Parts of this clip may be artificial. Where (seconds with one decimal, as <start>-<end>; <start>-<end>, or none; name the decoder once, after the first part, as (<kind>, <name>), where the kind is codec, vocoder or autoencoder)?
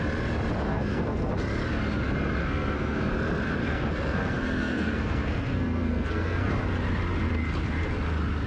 0.7-1.3 (codec, SNAC); 2.4-3.0; 3.6-6.5